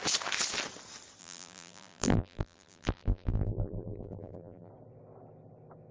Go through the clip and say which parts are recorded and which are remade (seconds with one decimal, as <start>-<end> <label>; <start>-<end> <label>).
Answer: 0.0-1.2 recorded; 1.2-4.7 remade; 4.7-5.9 recorded